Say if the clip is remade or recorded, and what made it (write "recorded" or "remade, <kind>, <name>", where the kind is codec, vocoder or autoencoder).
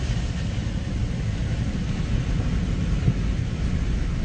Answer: recorded